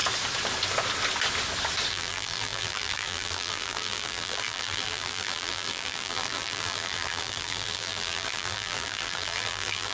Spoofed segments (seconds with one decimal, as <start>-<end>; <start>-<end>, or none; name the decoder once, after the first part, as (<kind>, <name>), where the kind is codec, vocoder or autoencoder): 1.9-9.9 (vocoder, BigVGAN v2)